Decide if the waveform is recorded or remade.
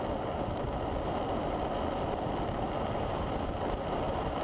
recorded